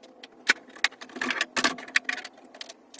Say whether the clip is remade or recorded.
recorded